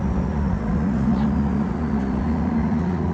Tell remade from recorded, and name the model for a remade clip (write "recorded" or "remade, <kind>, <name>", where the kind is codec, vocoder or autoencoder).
remade, vocoder, Vocos